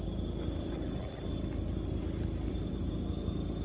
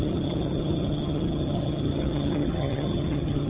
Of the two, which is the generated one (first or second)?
second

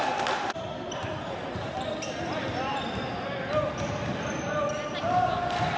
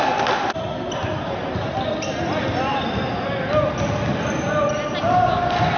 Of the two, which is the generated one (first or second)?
first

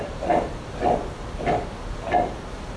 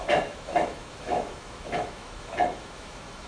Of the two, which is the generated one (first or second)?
second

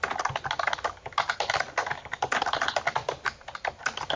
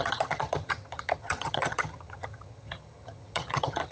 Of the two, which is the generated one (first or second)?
second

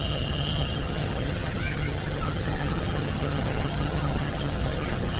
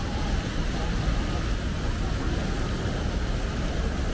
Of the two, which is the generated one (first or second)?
first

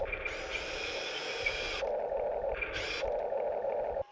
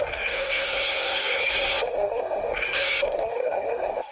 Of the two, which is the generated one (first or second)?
second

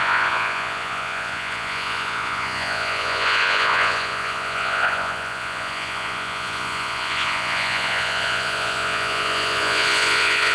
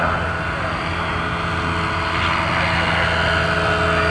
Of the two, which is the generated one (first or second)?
first